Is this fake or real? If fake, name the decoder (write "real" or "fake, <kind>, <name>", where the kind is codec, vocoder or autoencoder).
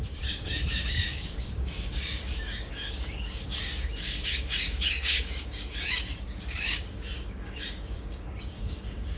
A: fake, codec, DAC